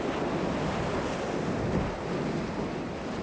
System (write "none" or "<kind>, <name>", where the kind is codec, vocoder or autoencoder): none